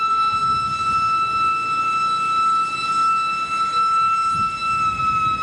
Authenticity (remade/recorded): recorded